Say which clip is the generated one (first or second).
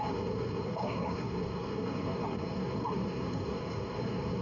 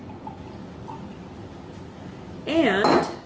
first